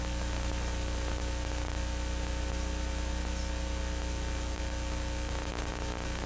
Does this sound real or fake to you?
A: real